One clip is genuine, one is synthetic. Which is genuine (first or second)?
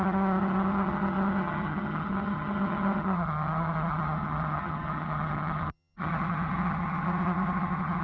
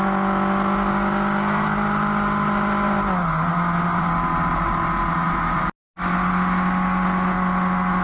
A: second